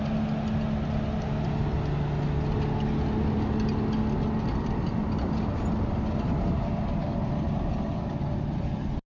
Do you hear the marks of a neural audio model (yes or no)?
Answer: no